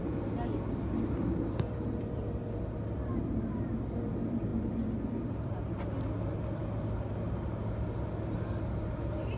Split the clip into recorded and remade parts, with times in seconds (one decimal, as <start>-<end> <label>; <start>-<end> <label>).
0.0-9.4 recorded